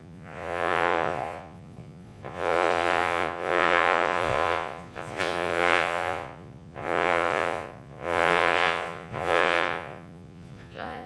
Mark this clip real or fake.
fake